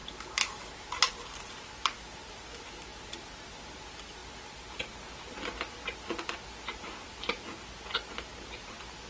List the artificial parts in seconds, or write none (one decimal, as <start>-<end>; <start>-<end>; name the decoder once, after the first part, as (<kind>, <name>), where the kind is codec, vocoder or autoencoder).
0.0-0.7 (codec, DAC)